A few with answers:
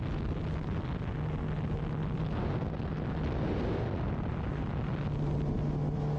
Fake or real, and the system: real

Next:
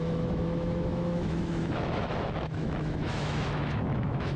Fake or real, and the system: fake, autoencoder, DAC-VAE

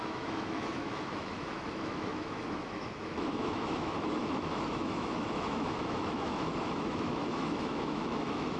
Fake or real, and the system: fake, autoencoder, DAC-VAE